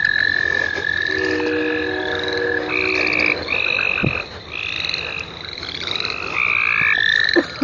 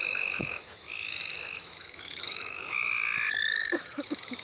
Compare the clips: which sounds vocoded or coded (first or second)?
second